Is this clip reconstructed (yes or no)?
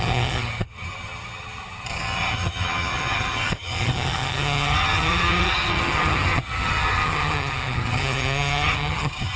yes